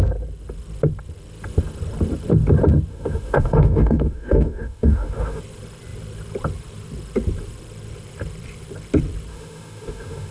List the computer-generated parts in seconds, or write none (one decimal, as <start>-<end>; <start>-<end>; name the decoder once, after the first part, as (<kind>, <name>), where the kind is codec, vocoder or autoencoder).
2.9-5.4 (autoencoder, DAC-VAE); 9.3-10.3